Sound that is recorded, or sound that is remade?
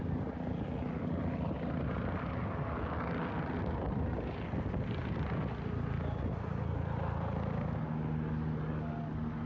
recorded